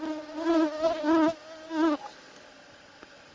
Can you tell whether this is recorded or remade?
recorded